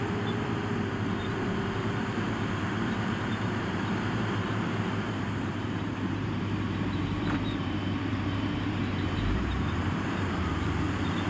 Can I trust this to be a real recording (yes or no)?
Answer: no